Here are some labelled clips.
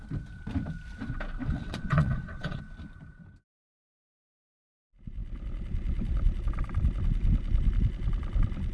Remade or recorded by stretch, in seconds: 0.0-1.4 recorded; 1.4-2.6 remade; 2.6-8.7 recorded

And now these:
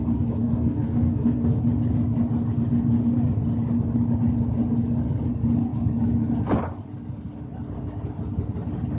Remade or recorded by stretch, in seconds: 0.0-0.4 recorded; 0.4-1.6 remade; 1.6-9.0 recorded

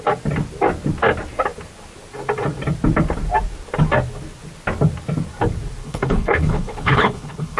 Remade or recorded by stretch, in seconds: 0.0-5.8 recorded; 5.8-7.6 remade

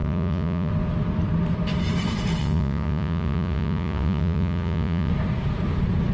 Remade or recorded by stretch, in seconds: 0.0-0.7 remade; 0.7-2.4 recorded; 2.4-5.1 remade; 5.1-6.1 recorded

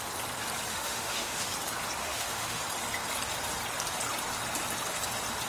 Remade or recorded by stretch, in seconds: 0.0-0.7 recorded; 0.7-1.5 remade; 1.5-2.0 recorded; 2.0-2.6 remade; 2.6-5.5 recorded

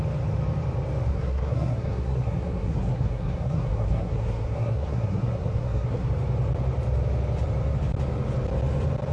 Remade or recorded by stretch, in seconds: 0.0-1.1 recorded; 1.1-6.1 remade; 6.1-9.1 recorded

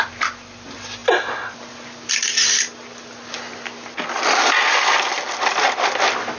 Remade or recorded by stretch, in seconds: 0.0-6.4 recorded